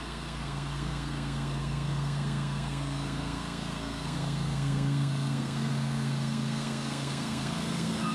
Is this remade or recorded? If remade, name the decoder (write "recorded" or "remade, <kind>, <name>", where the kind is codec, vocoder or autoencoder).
remade, codec, SNAC